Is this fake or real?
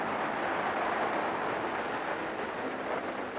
real